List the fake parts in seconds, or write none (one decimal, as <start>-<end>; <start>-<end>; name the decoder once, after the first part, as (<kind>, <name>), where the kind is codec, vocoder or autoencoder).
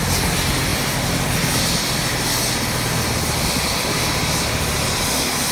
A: none